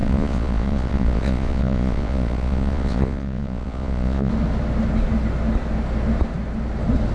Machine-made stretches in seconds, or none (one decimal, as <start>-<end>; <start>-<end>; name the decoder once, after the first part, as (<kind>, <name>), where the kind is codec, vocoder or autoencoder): 0.0-4.3 (vocoder, Vocos)